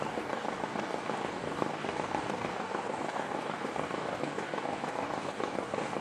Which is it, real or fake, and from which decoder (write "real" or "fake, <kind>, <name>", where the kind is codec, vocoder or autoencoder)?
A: fake, codec, DAC